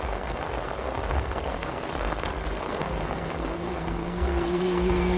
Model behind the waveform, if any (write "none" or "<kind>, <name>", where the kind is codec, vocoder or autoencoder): codec, SNAC